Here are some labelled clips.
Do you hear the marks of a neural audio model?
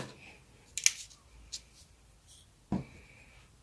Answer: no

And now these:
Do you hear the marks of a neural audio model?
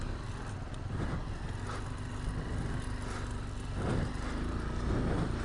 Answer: no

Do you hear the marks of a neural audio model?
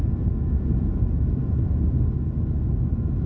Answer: no